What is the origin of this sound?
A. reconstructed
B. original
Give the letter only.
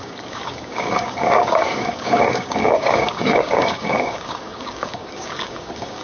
A